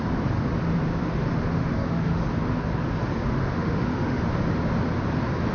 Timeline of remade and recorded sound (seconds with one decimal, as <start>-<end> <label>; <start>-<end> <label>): 0.0-1.5 recorded; 1.5-2.2 remade; 2.2-3.4 recorded; 3.4-4.3 remade; 4.3-5.5 recorded